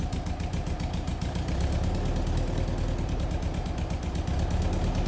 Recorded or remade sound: recorded